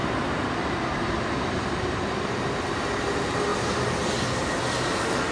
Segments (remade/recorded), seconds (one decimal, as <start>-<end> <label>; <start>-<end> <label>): 0.0-1.9 remade; 1.9-5.3 recorded